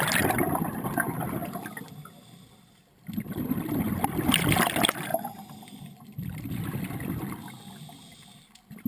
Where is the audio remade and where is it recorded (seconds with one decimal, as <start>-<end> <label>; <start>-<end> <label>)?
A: 0.0-5.1 recorded; 5.1-6.4 remade; 6.4-8.9 recorded